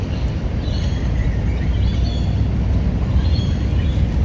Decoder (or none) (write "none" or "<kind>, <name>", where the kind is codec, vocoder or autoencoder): none